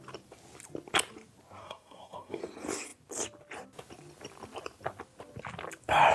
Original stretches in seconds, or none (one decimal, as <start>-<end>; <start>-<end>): 0.0-1.6; 2.4-6.1